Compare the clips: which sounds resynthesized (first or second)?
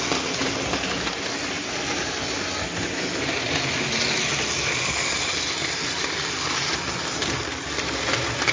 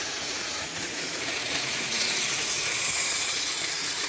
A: second